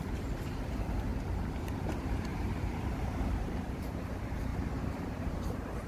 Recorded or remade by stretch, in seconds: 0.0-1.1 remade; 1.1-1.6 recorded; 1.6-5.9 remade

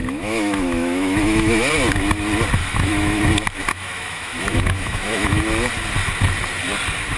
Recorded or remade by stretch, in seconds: 0.0-1.7 remade; 1.7-2.6 recorded; 2.6-3.2 remade; 3.2-3.7 recorded; 3.7-5.4 remade; 5.4-7.2 recorded

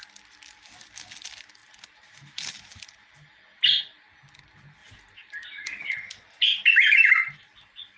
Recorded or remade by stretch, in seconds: 0.0-1.6 recorded; 1.6-4.2 remade; 4.2-4.8 recorded; 4.8-5.9 remade; 5.9-6.8 recorded; 6.8-7.5 remade; 7.5-8.0 recorded

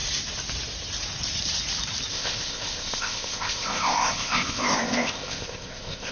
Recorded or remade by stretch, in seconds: 0.0-2.1 recorded; 2.1-6.1 remade

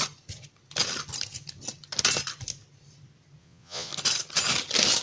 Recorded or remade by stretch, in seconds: 0.0-3.4 recorded; 3.4-3.9 remade; 3.9-5.0 recorded

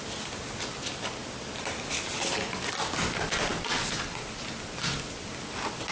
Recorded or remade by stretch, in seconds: 0.0-5.9 recorded